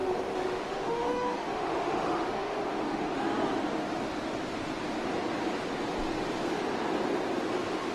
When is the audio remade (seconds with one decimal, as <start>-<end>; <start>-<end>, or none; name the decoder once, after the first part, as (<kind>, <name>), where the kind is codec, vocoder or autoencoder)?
0.0-3.2 (autoencoder, DAC-VAE)